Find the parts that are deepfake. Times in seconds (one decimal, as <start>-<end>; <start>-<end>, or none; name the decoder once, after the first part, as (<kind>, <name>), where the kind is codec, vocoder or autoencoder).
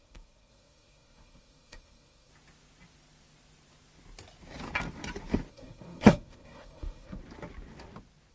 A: 0.0-2.3 (codec, SNAC); 5.5-7.2